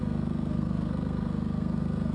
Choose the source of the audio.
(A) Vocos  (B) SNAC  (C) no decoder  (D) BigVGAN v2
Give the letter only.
B